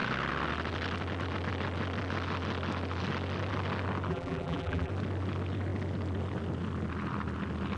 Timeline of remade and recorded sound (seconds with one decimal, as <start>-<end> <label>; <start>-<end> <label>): 0.0-4.1 recorded; 4.1-4.9 remade; 4.9-7.8 recorded